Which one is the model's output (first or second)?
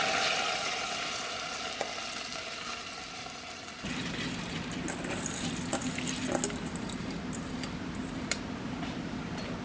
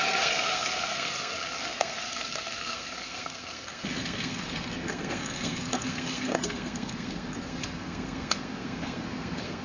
second